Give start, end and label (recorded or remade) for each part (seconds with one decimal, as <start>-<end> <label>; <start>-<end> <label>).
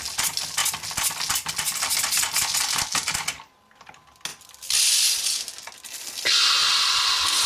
0.0-4.3 recorded; 4.3-5.4 remade; 5.4-6.6 recorded; 6.6-7.5 remade